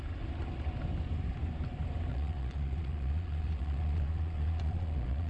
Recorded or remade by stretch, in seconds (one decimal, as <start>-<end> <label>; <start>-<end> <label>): 0.0-2.1 recorded; 2.1-5.3 remade